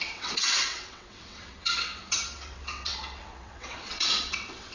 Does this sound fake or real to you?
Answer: fake